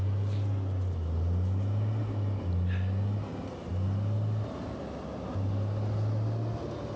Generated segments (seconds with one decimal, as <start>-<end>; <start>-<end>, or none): none